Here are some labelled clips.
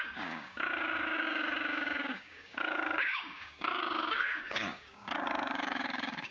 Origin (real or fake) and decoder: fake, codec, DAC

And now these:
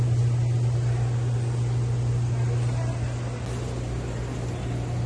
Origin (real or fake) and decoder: real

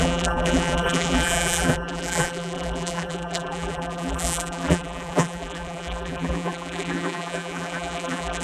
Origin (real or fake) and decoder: fake, vocoder, BigVGAN v2